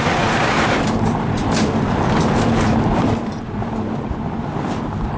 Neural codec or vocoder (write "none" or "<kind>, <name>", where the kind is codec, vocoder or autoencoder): vocoder, BigVGAN v2